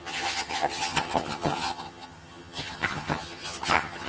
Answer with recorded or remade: remade